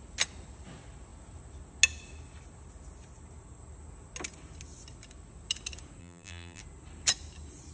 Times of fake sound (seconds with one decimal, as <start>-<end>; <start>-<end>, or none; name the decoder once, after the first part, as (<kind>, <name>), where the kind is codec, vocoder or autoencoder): 6.0-6.6 (vocoder, BigVGAN v2)